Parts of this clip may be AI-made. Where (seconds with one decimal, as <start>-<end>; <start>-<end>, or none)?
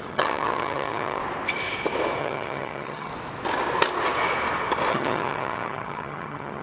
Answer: 0.0-1.2; 2.2-3.1; 4.9-6.6